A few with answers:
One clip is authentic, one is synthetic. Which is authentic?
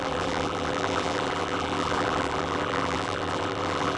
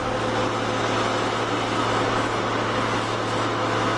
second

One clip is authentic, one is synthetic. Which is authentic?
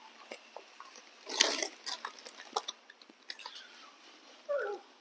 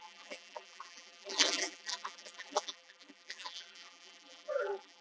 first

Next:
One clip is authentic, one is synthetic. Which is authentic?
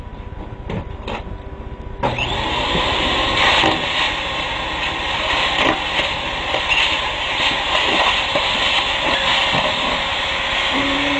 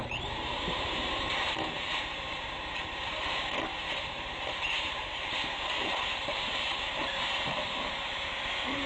first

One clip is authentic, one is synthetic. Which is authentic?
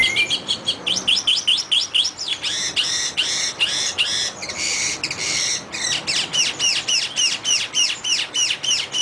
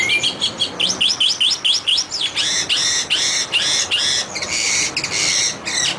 second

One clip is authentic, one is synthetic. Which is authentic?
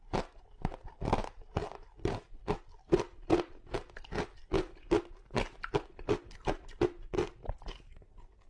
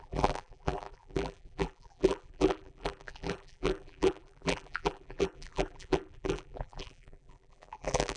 first